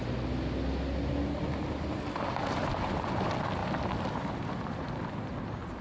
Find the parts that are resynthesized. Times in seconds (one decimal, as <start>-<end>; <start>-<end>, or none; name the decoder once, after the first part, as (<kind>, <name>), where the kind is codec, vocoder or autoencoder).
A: 3.6-5.1 (vocoder, BigVGAN v2)

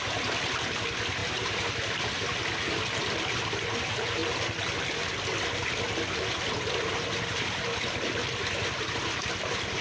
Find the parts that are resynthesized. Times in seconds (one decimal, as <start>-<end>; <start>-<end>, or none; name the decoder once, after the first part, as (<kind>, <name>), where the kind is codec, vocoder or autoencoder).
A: 1.2-2.1 (vocoder, BigVGAN v2)

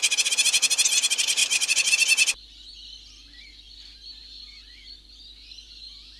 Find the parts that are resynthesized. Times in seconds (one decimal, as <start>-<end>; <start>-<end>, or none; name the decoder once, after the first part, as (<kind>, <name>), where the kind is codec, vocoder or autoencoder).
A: 1.4-1.9 (vocoder, BigVGAN v2)

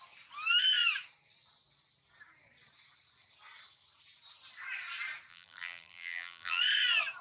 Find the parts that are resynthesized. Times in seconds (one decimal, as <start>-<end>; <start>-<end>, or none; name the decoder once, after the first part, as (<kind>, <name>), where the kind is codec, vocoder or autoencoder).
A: 5.3-6.6 (vocoder, BigVGAN v2)

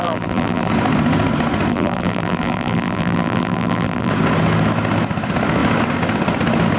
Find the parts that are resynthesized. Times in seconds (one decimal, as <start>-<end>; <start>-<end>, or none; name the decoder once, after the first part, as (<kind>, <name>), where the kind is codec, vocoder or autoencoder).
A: 0.0-0.7 (vocoder, BigVGAN v2); 1.7-4.1

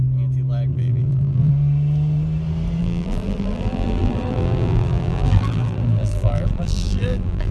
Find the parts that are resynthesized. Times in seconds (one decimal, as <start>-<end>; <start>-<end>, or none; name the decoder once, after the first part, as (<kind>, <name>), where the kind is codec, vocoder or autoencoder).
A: 0.7-1.5 (vocoder, BigVGAN v2); 2.8-7.5

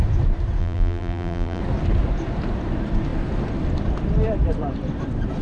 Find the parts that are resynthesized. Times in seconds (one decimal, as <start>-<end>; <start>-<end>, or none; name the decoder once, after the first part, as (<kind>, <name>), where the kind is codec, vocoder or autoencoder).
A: 0.6-1.6 (vocoder, BigVGAN v2)